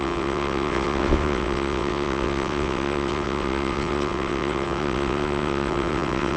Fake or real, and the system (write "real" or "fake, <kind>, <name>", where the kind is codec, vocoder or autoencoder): fake, vocoder, WaveNeXt